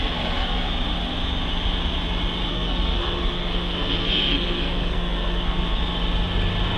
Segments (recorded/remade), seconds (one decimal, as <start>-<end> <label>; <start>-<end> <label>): 0.0-0.7 remade; 0.7-2.5 recorded; 2.5-5.8 remade; 5.8-6.8 recorded